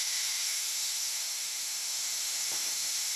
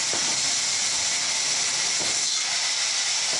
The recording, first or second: second